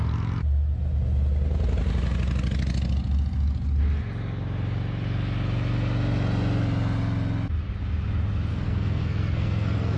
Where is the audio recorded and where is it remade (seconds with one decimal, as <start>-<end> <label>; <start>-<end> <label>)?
0.0-8.5 recorded; 8.5-10.0 remade